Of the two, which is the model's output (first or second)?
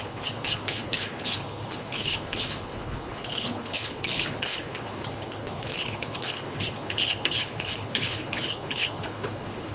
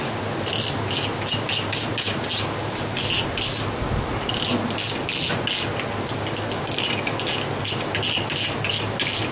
first